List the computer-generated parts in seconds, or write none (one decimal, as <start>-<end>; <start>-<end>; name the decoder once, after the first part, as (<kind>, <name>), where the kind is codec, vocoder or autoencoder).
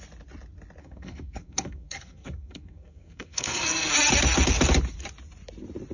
0.8-3.9 (codec, SNAC)